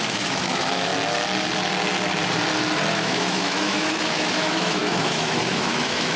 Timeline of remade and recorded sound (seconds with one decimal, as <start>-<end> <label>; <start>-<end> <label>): 0.0-0.9 remade; 0.9-2.9 recorded; 2.9-6.2 remade